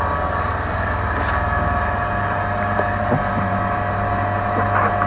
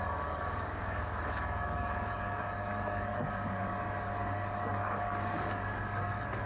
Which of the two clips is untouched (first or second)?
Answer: first